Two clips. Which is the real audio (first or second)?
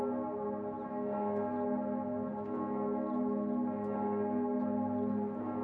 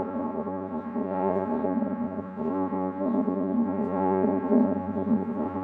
first